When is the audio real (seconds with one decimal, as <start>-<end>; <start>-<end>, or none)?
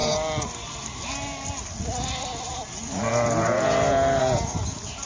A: 0.0-5.1